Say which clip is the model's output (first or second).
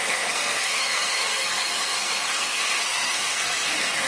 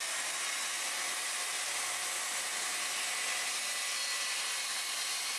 first